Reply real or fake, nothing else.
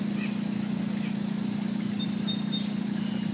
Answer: real